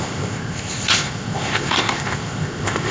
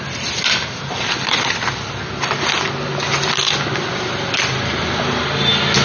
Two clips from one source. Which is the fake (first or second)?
first